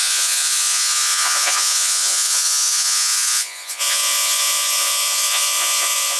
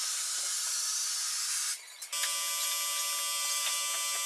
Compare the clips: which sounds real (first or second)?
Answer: second